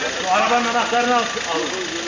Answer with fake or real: real